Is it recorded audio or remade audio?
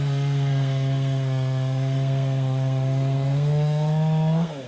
remade